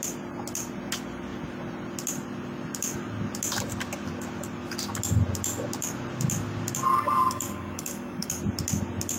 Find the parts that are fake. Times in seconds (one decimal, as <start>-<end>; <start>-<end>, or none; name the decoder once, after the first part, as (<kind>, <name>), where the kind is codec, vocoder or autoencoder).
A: 6.9-8.4 (codec, DAC)